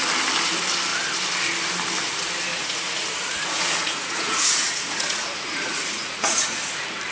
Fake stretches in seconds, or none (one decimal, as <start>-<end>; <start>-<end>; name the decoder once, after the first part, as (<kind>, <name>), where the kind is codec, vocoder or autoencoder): 2.5-6.6 (vocoder, Vocos)